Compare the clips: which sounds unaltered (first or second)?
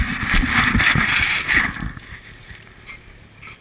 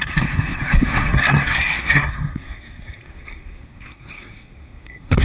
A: first